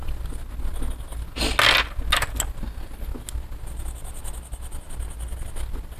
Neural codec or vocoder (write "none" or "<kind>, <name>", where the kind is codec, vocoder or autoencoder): none